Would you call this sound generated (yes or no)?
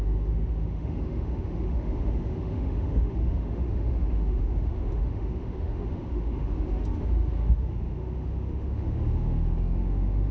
yes